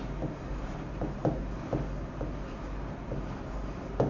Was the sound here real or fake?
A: real